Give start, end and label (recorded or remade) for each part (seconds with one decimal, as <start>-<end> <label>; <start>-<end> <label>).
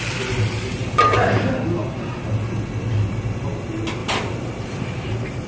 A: 0.0-4.0 recorded; 4.0-5.5 remade